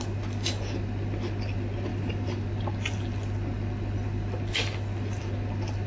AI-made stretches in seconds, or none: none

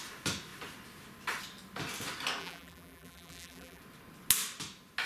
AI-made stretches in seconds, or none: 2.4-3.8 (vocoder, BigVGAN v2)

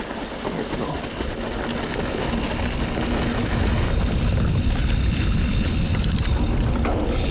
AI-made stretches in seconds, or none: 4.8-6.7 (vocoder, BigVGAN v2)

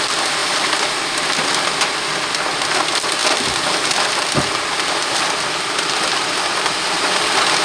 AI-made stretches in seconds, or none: none

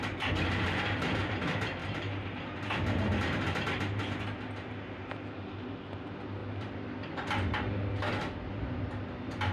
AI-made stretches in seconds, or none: 1.8-2.4 (vocoder, BigVGAN v2); 6.4-8.3

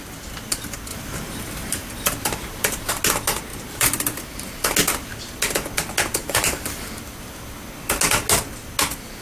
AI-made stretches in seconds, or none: 0.9-2.9 (vocoder, BigVGAN v2); 3.5-4.6; 6.2-7.0